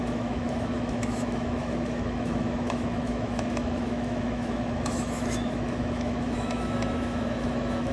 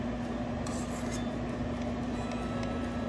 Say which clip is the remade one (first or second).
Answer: first